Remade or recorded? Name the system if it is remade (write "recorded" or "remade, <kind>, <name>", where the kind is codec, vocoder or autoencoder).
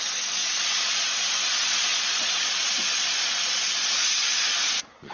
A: remade, vocoder, Vocos